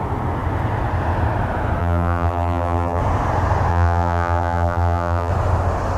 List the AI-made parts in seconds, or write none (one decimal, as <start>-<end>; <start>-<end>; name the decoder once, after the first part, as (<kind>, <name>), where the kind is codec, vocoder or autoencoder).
1.8-3.0 (vocoder, BigVGAN v2); 3.7-5.3